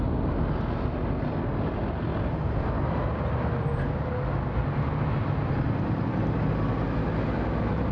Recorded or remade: recorded